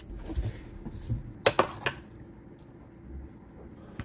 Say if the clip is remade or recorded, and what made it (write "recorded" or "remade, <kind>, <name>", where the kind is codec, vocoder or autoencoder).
recorded